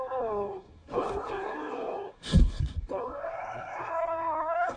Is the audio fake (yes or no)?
yes